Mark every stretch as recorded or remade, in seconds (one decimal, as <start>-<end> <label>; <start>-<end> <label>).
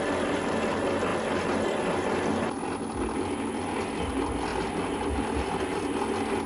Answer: 0.0-6.5 recorded